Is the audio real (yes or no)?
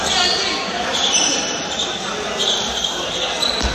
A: yes